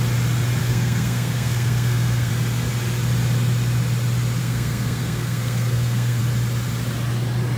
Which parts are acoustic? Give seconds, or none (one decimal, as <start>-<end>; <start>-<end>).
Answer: 0.0-0.6; 2.3-4.4; 6.2-7.6